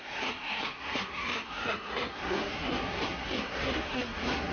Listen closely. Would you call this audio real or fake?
fake